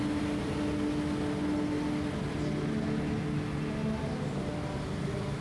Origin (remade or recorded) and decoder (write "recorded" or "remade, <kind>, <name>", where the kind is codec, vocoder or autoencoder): recorded